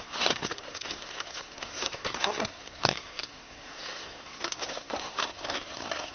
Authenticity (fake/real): fake